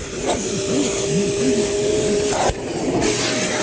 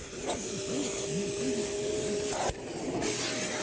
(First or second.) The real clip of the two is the second